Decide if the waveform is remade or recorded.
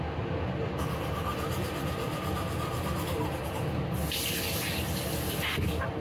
recorded